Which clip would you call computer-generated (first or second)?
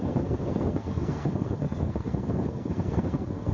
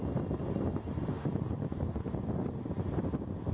first